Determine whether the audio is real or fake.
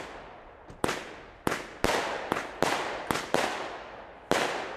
real